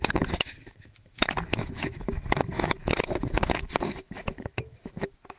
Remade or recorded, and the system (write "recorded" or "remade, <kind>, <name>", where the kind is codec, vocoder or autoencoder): remade, autoencoder, DAC-VAE